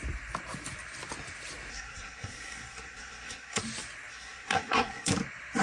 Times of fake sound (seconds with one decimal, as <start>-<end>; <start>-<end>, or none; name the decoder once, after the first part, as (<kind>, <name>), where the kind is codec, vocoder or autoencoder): 1.7-3.6 (codec, SNAC); 4.1-5.1